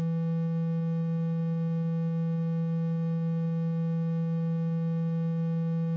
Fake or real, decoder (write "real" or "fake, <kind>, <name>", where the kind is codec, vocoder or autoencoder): real